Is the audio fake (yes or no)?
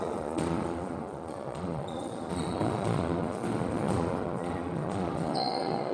yes